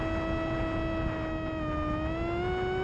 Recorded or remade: recorded